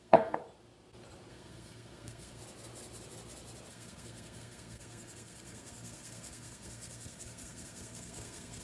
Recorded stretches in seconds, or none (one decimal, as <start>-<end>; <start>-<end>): 0.4-1.3; 2.4-3.7